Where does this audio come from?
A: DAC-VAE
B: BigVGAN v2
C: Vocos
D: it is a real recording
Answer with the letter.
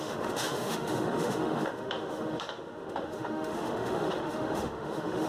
A